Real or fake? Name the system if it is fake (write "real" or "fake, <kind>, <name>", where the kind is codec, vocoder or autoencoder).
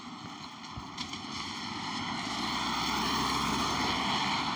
real